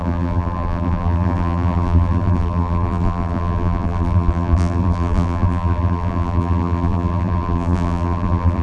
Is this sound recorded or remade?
remade